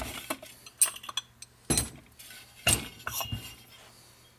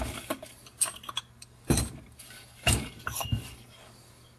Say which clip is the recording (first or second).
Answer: first